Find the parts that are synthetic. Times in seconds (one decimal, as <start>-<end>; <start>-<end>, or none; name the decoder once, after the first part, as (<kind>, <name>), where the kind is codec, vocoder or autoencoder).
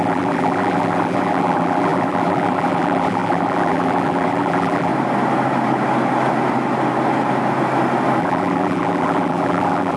0.0-4.9 (vocoder, BigVGAN v2); 8.2-10.0